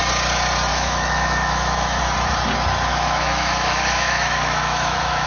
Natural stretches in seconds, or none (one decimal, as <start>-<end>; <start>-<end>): 0.0-0.7; 2.0-2.9

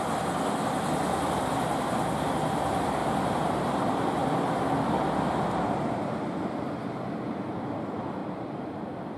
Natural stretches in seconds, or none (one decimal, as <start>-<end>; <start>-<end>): 0.0-3.0; 3.7-8.2

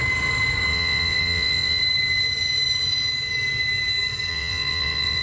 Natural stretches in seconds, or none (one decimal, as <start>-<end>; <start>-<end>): 0.0-0.7; 1.8-4.3

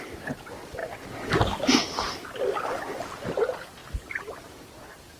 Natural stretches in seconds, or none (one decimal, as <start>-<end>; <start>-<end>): 0.8-3.3

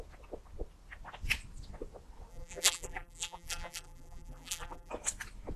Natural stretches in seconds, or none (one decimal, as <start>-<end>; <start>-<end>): 0.0-2.3; 4.9-5.6

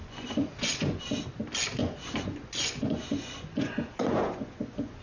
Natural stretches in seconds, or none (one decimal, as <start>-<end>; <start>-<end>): 1.0-1.8

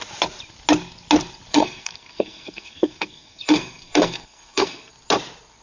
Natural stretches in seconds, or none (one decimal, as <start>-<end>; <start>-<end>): 0.0-1.5; 4.9-5.6